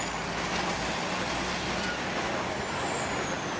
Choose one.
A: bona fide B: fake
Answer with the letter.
A